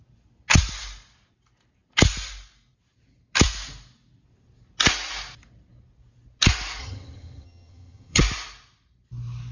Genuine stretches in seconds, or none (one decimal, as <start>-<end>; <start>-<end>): 0.0-6.8; 8.2-9.5